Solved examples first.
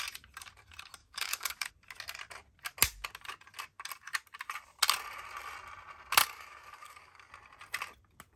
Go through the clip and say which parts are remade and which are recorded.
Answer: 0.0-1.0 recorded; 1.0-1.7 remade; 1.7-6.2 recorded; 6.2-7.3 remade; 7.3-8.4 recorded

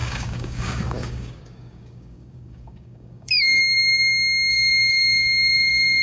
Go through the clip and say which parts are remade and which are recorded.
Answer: 0.0-3.6 remade; 3.6-4.5 recorded; 4.5-6.0 remade

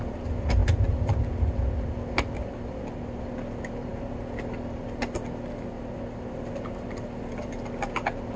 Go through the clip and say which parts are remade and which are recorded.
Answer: 0.0-8.4 recorded

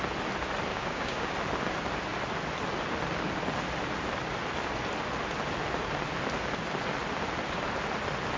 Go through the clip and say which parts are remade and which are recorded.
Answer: 0.0-0.7 recorded; 0.7-1.3 remade; 1.3-8.4 recorded

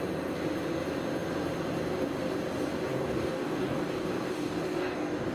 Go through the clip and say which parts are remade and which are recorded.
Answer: 0.0-2.9 recorded; 2.9-5.3 remade

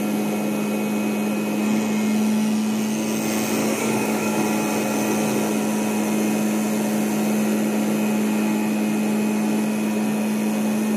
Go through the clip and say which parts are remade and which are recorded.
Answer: 0.0-3.6 recorded; 3.6-4.4 remade; 4.4-11.0 recorded